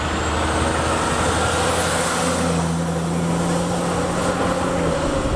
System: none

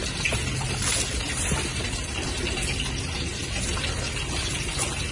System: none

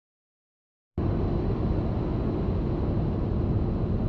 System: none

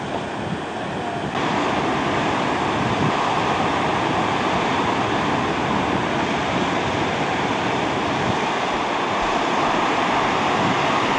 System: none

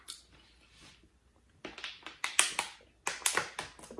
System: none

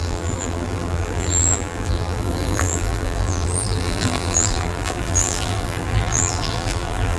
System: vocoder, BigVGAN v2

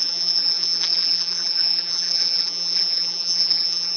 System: vocoder, BigVGAN v2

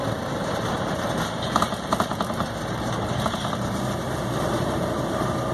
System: vocoder, BigVGAN v2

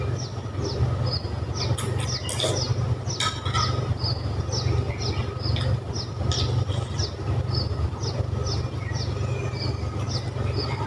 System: none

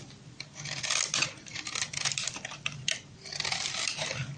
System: vocoder, BigVGAN v2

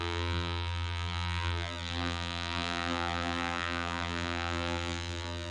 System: vocoder, BigVGAN v2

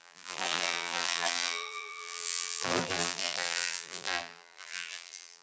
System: vocoder, BigVGAN v2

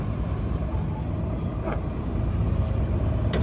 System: vocoder, BigVGAN v2